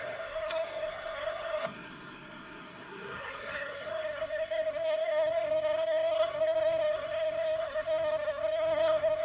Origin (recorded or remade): remade